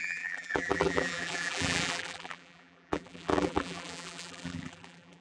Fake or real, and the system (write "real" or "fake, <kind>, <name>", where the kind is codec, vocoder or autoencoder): fake, vocoder, BigVGAN v2